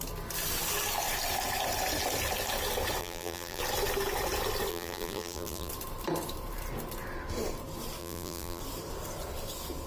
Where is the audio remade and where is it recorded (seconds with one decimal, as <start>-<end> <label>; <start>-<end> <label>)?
0.0-3.0 recorded; 3.0-3.6 remade; 3.6-4.7 recorded; 4.7-5.7 remade; 5.7-8.0 recorded; 8.0-8.6 remade; 8.6-9.9 recorded